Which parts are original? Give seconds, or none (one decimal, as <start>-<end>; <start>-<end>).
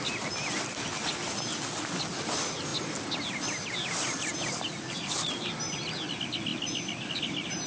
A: 0.0-7.7